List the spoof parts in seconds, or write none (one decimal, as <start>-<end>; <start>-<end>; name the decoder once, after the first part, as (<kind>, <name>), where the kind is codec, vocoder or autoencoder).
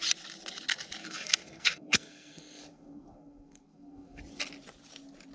1.0-4.2 (codec, SNAC)